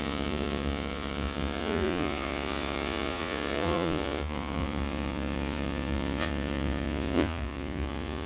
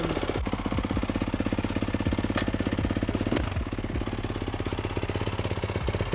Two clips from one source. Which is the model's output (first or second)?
first